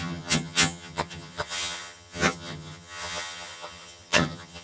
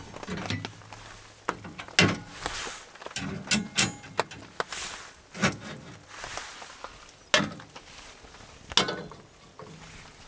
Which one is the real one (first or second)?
second